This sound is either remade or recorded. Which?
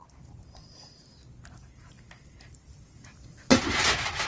remade